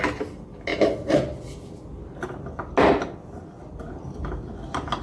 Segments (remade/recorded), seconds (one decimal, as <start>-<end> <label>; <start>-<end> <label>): 0.0-5.0 recorded